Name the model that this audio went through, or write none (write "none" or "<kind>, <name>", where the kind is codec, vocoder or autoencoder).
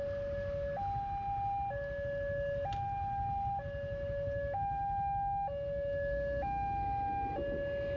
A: none